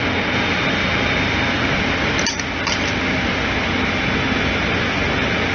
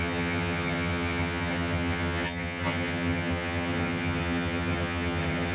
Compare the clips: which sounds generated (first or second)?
second